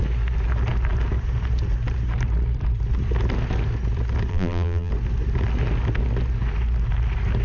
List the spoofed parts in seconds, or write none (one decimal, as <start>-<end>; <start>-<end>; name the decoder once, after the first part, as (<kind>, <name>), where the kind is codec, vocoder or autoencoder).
4.3-4.9 (vocoder, BigVGAN v2)

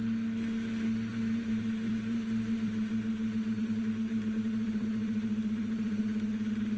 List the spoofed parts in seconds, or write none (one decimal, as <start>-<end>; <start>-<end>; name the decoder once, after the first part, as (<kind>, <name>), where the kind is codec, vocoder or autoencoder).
1.1-2.9 (vocoder, BigVGAN v2); 3.6-6.0

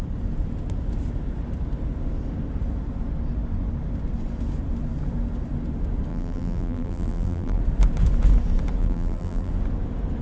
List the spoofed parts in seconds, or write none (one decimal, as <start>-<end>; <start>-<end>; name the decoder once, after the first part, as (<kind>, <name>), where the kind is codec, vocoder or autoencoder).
6.1-7.6 (vocoder, BigVGAN v2); 8.8-9.5

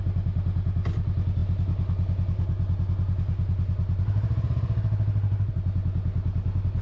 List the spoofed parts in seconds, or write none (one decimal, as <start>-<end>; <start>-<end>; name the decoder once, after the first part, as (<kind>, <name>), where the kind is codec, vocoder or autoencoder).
none

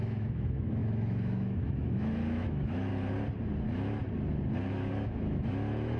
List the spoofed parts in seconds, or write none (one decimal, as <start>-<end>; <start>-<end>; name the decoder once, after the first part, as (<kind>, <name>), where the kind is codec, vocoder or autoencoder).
0.0-2.9 (autoencoder, DAC-VAE); 4.7-6.0